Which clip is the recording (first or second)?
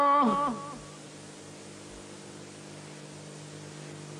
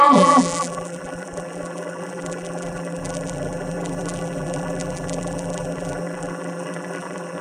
first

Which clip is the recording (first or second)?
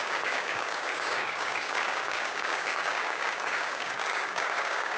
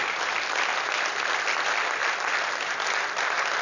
second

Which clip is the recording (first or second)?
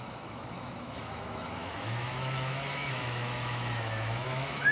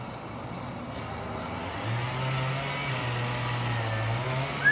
second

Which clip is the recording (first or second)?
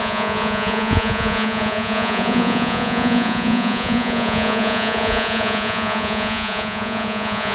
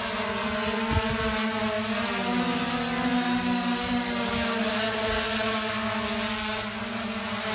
second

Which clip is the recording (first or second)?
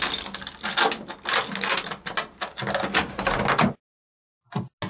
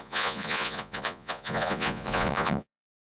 first